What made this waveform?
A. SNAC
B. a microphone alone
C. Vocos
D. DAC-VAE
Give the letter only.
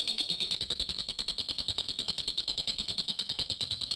A